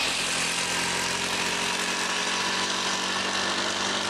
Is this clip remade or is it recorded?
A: recorded